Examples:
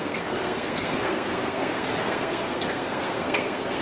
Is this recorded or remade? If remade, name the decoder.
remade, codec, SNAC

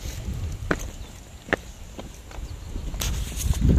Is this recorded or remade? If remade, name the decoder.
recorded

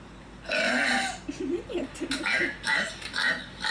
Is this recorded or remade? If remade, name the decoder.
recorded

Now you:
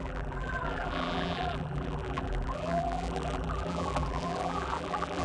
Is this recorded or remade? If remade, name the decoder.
remade, vocoder, BigVGAN v2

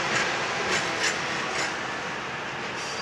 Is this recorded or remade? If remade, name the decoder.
recorded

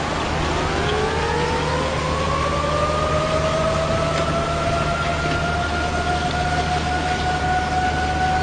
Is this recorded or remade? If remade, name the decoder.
recorded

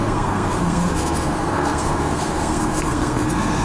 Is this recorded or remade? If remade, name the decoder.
remade, codec, SNAC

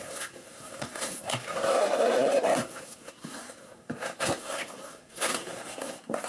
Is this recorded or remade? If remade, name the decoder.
remade, codec, SNAC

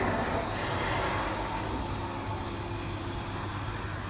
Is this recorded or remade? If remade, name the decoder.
recorded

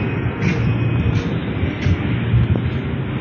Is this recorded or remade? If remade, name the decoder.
recorded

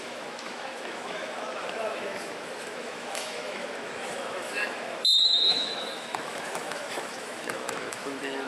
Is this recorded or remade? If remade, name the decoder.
remade, autoencoder, DAC-VAE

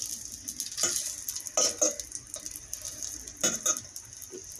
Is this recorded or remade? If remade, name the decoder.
recorded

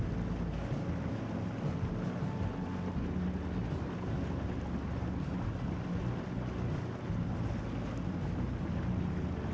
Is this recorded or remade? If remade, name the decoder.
recorded